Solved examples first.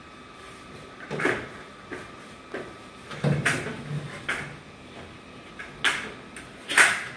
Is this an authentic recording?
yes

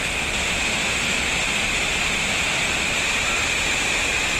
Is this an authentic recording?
yes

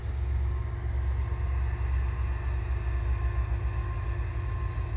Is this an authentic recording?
yes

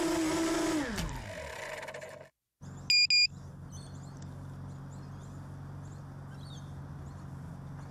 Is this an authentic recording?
yes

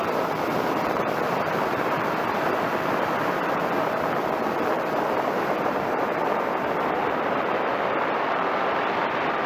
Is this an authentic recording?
no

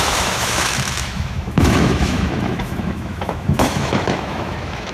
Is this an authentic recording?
no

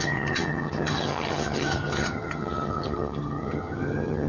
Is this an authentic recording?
no